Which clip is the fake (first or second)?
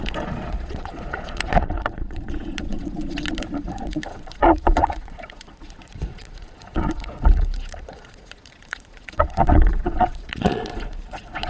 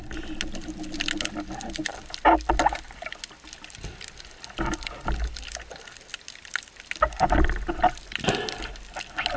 first